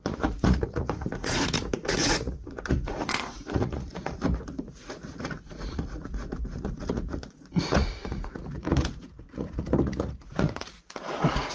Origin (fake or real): fake